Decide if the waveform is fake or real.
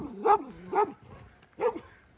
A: real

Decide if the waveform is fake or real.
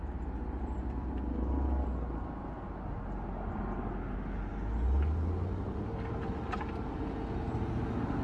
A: real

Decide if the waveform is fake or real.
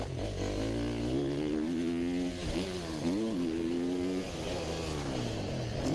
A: real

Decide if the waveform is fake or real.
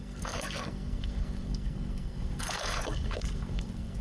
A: fake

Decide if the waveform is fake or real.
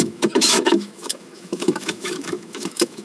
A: fake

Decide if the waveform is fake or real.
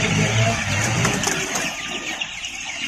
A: fake